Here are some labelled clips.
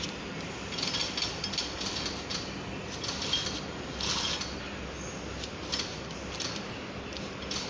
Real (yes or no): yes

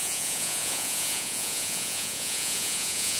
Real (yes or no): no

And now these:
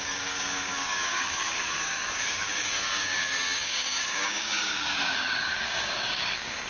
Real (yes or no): no